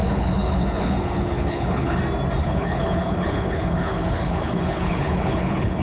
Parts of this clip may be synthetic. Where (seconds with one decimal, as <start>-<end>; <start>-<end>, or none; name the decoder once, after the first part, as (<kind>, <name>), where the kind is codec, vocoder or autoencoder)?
0.0-2.0 (codec, HILCodec); 2.4-5.8